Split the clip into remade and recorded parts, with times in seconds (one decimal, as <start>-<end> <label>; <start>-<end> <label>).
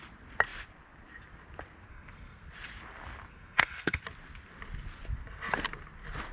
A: 0.0-1.9 recorded; 1.9-2.5 remade; 2.5-3.3 recorded; 3.3-4.0 remade; 4.0-6.3 recorded